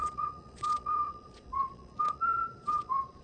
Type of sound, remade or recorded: remade